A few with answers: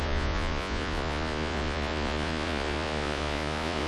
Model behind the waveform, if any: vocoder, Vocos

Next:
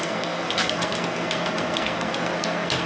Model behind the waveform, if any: codec, SNAC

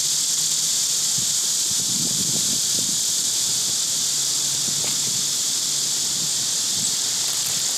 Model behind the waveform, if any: vocoder, BigVGAN v2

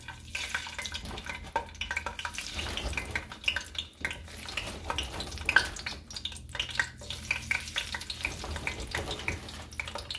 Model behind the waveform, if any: none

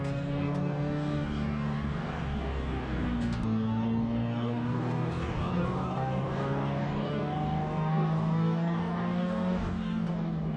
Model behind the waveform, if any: codec, DAC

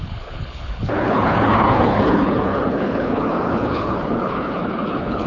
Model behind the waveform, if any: codec, HILCodec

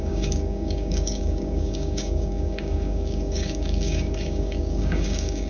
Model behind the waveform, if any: codec, DAC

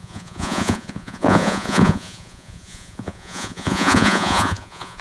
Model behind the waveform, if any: vocoder, Vocos